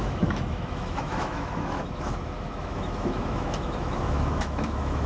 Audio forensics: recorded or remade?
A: remade